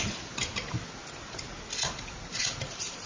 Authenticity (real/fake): real